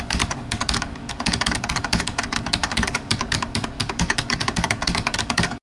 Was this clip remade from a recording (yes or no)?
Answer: yes